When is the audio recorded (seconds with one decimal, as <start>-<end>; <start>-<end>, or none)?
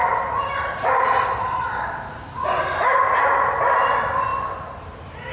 2.2-4.3